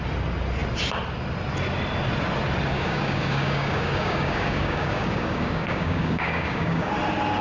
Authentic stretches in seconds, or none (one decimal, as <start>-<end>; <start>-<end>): 0.0-2.7; 6.9-7.4